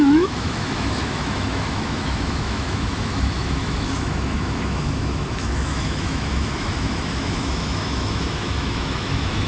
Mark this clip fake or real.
fake